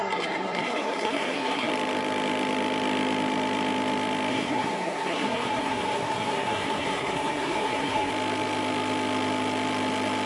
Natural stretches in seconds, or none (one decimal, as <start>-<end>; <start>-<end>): 1.7-4.3; 8.1-10.3